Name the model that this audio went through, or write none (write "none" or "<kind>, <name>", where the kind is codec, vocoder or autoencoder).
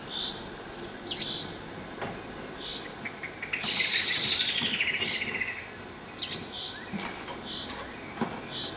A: none